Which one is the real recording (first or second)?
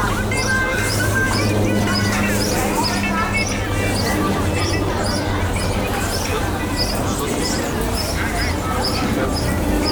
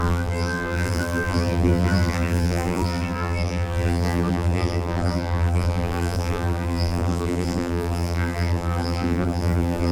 first